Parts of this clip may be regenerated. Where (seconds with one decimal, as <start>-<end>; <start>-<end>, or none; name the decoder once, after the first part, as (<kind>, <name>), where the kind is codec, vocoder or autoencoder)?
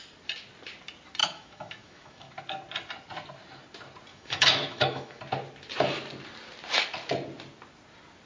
1.2-2.4 (autoencoder, DAC-VAE); 4.1-5.2